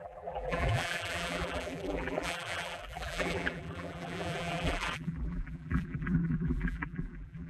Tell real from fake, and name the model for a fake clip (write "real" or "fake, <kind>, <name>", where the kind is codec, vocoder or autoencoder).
fake, vocoder, BigVGAN v2